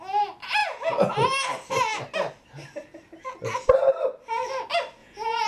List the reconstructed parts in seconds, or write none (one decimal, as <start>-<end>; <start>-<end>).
5.0-5.5